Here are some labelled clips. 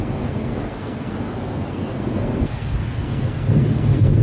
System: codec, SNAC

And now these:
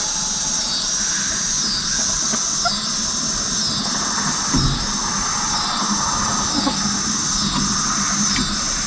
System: none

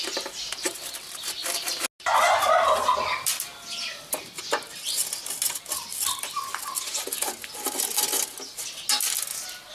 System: none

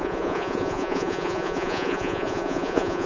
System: vocoder, Vocos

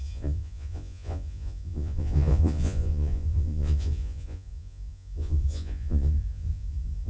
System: vocoder, Vocos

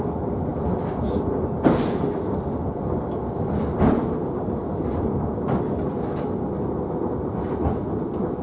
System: none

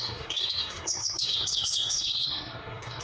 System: codec, SNAC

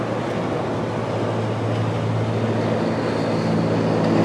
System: none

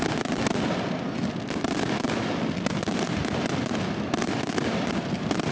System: none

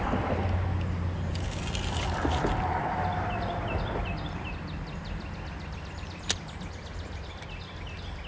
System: none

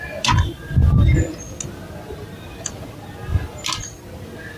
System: none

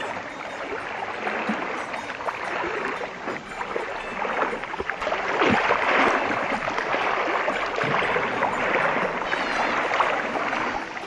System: none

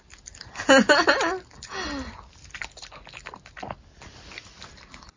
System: none